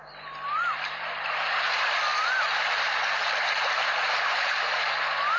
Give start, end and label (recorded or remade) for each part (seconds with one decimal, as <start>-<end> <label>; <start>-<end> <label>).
0.0-2.1 recorded; 2.1-4.1 remade; 4.1-5.4 recorded